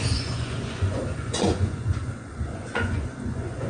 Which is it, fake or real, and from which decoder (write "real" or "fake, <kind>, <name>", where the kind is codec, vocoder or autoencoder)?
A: fake, vocoder, Vocos